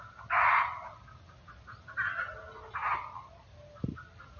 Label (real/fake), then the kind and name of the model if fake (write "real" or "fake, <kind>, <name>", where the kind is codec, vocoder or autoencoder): real